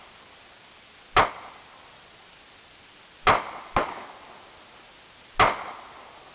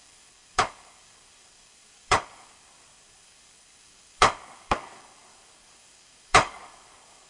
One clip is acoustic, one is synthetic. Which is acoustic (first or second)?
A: first